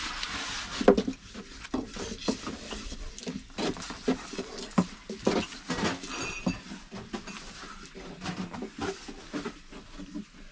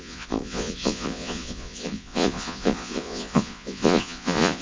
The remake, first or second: second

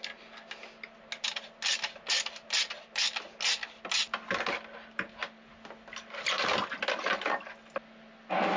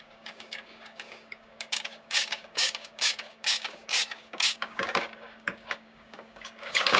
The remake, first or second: second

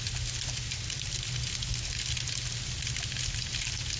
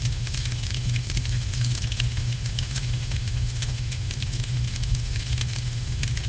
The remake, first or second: second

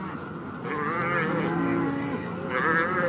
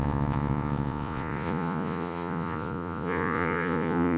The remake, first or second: second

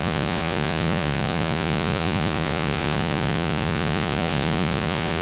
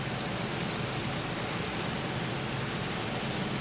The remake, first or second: first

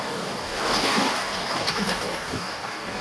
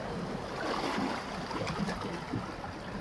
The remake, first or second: first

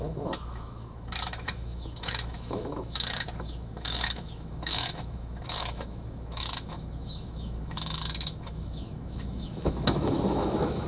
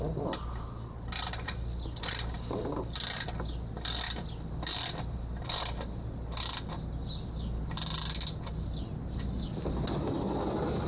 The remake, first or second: first